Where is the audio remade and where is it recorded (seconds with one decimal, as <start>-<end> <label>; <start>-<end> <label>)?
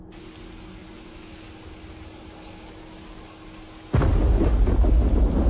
0.0-5.5 recorded